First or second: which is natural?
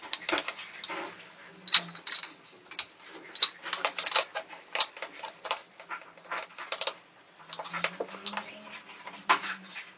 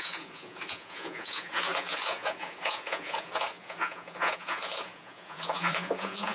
first